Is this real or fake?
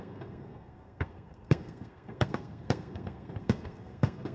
fake